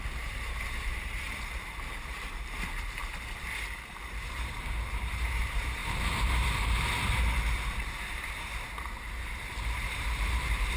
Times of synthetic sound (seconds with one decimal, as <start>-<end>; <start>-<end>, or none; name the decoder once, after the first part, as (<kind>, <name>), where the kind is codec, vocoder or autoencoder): 0.0-3.0 (vocoder, BigVGAN v2); 3.9-8.5; 9.8-10.8